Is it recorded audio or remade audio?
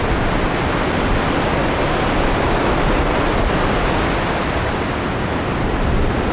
recorded